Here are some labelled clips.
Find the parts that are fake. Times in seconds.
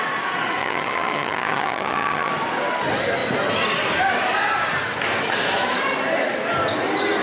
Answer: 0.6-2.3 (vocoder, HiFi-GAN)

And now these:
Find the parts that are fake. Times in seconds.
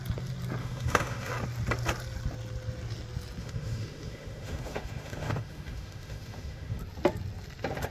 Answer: 0.6-1.3 (autoencoder, DAC-VAE); 3.4-6.8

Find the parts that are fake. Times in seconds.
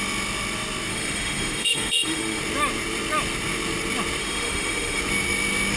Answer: 0.9-2.4 (autoencoder, DAC-VAE); 4.2-5.0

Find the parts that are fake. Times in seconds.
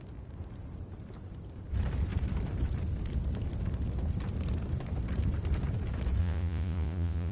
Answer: 6.2-7.3 (vocoder, Vocos)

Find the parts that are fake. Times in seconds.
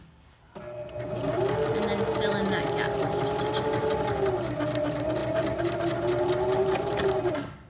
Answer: none